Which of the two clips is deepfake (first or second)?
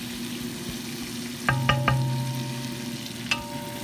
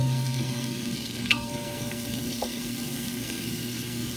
second